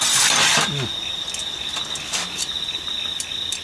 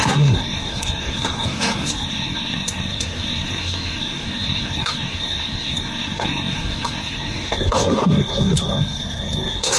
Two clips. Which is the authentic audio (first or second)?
first